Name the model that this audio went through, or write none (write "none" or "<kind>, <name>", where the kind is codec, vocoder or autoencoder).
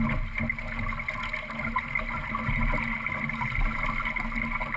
none